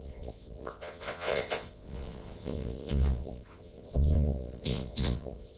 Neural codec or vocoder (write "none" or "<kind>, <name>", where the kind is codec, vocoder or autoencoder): vocoder, Vocos